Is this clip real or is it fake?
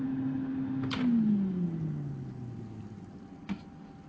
real